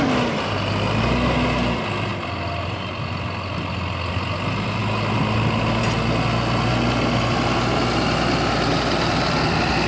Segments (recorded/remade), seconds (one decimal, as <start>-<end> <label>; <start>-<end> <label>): 0.0-9.9 recorded